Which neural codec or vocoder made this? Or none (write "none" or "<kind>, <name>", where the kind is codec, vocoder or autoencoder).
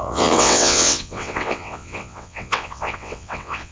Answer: vocoder, WaveNeXt